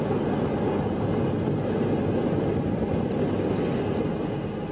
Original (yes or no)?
yes